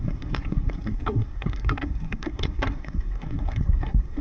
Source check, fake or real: fake